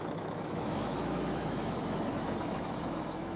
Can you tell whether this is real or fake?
fake